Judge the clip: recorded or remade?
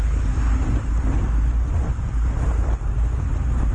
recorded